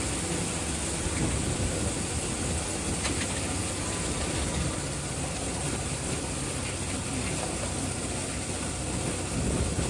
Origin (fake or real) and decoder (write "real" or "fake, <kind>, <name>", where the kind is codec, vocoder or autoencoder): real